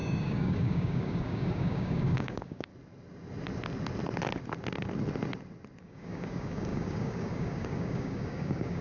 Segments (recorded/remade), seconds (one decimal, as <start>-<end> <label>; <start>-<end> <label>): 0.0-2.7 remade; 2.7-5.8 recorded; 5.8-8.8 remade

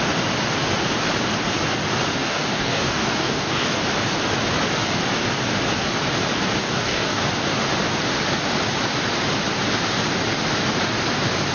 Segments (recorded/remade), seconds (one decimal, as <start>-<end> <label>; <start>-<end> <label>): 0.0-2.2 recorded; 2.2-3.8 remade; 3.8-6.6 recorded; 6.6-7.2 remade; 7.2-11.5 recorded

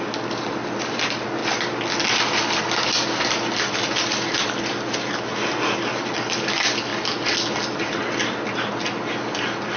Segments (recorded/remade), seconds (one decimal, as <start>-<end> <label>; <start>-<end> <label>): 0.0-9.8 recorded

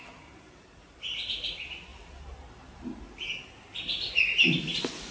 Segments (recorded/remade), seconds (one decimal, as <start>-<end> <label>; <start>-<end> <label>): 0.0-5.1 recorded

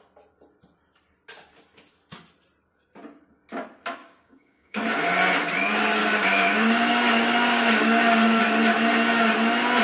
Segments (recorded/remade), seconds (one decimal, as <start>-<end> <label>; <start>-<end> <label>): 0.0-4.0 recorded; 4.0-4.8 remade; 4.8-6.0 recorded; 6.0-8.4 remade; 8.4-9.8 recorded

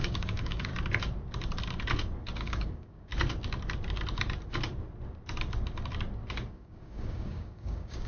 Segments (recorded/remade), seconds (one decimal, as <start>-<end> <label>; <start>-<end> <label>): 0.0-0.7 remade; 0.7-2.4 recorded; 2.4-3.1 remade; 3.1-6.5 recorded; 6.5-8.1 remade

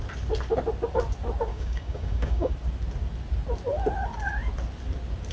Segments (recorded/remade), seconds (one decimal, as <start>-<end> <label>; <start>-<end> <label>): 0.0-1.5 recorded; 1.5-2.5 remade; 2.5-5.3 recorded

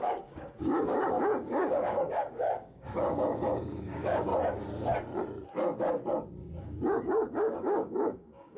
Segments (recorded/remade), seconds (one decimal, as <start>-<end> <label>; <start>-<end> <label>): 0.0-4.3 remade; 4.3-6.6 recorded; 6.6-8.6 remade